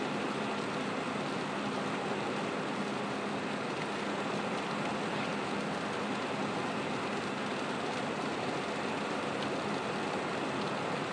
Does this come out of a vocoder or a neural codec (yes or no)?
no